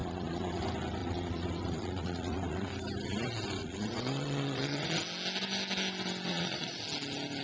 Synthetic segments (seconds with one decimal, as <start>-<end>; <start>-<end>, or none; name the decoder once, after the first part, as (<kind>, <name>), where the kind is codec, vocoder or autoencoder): 0.0-0.6 (vocoder, Vocos); 1.0-2.7; 3.6-5.0; 6.3-6.8